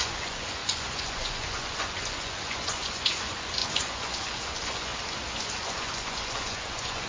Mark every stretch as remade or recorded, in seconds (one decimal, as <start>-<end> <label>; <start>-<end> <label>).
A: 0.0-4.9 remade; 4.9-5.4 recorded; 5.4-7.1 remade